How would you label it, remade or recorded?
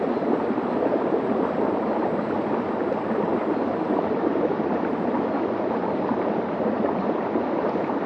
recorded